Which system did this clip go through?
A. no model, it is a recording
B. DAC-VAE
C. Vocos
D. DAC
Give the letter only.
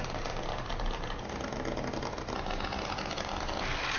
A